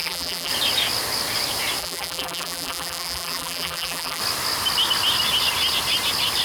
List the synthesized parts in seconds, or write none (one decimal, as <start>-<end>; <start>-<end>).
0.0-0.5; 1.8-4.2